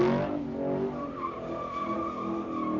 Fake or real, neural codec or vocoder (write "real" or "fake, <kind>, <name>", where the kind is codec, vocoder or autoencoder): real